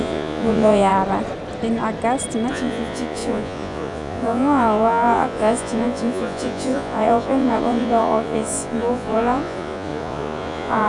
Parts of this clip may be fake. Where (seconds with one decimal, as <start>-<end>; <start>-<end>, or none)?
0.0-0.9; 2.5-10.9